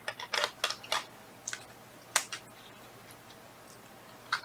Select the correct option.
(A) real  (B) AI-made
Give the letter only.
A